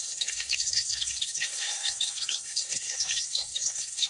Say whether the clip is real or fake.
fake